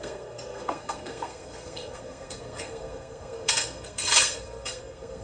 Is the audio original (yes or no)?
no